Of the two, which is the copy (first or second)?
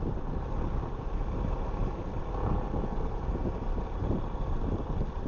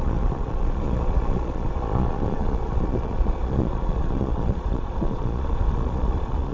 second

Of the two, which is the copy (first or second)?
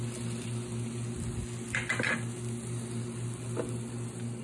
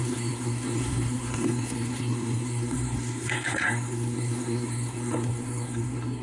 second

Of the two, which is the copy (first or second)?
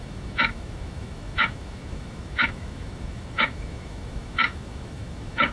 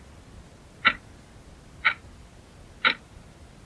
first